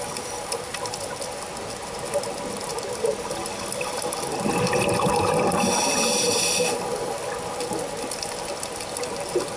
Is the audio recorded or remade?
recorded